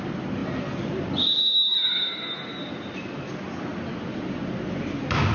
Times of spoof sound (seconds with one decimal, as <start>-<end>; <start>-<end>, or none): none